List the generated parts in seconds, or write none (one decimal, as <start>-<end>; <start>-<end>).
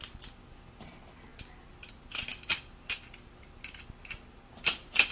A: none